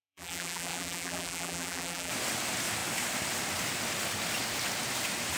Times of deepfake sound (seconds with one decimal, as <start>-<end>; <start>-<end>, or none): 0.0-2.1